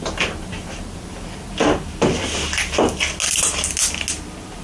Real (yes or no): yes